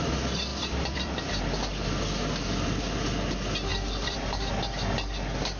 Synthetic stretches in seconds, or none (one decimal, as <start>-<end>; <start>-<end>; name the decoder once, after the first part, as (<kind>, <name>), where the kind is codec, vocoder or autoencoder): 0.5-1.4 (vocoder, BigVGAN v2); 3.7-4.5